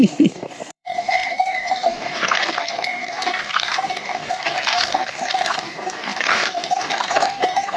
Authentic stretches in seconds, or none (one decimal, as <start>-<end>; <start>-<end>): none